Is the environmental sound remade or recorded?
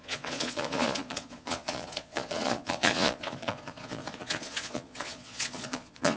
remade